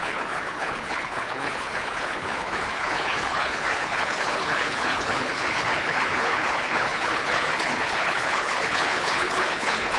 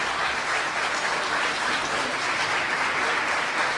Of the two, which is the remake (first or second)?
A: first